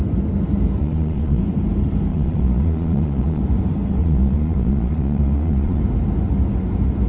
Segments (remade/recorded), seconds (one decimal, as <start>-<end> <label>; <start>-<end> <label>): 0.0-0.8 recorded; 0.8-1.4 remade; 1.4-2.1 recorded; 2.1-3.4 remade; 3.4-4.0 recorded; 4.0-5.8 remade; 5.8-7.1 recorded